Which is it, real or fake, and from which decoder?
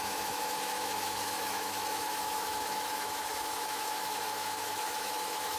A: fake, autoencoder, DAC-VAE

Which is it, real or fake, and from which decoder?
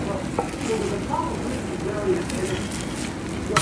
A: real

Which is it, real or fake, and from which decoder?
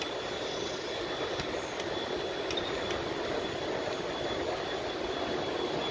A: real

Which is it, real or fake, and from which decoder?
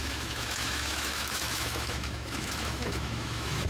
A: fake, autoencoder, DAC-VAE